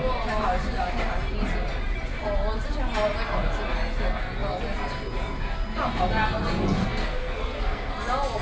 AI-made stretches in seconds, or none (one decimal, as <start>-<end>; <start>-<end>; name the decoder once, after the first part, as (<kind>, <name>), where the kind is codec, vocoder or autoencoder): 6.8-7.9 (codec, SNAC)